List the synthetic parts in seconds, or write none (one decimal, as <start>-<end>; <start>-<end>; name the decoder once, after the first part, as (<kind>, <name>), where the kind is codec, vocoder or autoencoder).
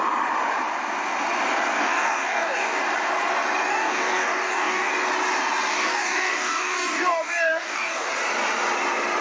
1.8-2.8 (codec, DAC); 3.7-4.9; 5.7-8.1